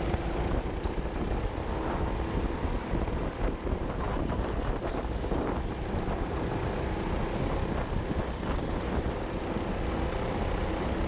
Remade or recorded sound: recorded